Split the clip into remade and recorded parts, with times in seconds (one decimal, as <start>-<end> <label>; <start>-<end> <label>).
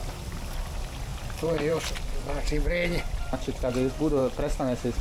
0.0-1.1 recorded; 1.1-1.8 remade; 1.8-2.8 recorded; 2.8-3.7 remade; 3.7-4.2 recorded; 4.2-5.0 remade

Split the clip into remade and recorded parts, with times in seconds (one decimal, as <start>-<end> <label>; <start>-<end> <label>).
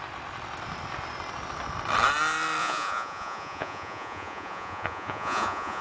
0.0-2.6 recorded; 2.6-5.8 remade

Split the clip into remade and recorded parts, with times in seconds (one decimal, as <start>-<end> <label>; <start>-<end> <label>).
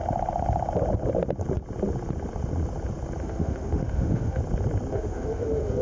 0.0-3.2 recorded; 3.2-4.4 remade; 4.4-4.9 recorded; 4.9-5.8 remade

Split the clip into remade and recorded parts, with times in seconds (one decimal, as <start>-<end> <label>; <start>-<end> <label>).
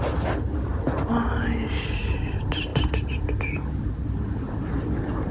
0.0-5.3 recorded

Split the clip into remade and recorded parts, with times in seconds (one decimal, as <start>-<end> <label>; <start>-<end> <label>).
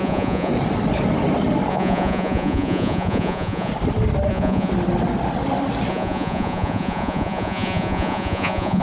0.0-0.5 remade; 0.5-1.7 recorded; 1.7-3.7 remade; 3.7-4.3 recorded; 4.3-4.7 remade; 4.7-5.9 recorded; 5.9-8.8 remade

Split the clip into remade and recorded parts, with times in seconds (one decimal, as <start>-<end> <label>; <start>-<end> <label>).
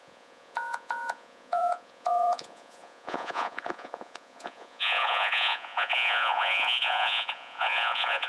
0.0-8.3 remade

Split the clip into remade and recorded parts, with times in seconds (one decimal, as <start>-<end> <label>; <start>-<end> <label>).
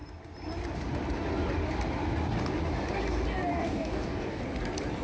0.0-3.5 recorded; 3.5-4.4 remade; 4.4-5.0 recorded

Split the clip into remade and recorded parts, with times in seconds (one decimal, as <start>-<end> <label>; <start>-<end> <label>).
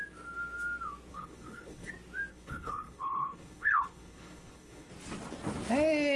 0.0-1.1 recorded; 1.1-1.9 remade; 1.9-2.3 recorded; 2.3-4.9 remade; 4.9-6.2 recorded